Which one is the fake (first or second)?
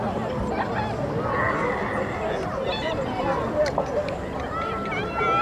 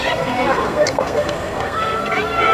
second